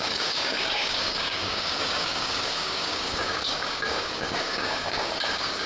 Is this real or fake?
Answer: fake